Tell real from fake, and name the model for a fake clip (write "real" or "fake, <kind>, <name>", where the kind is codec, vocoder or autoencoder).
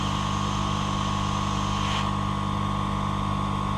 real